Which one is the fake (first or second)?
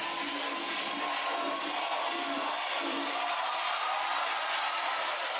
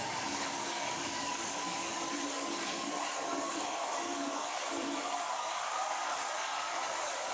second